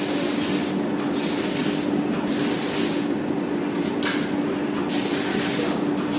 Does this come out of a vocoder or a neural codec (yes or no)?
no